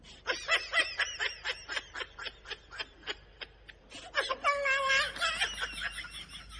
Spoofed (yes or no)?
no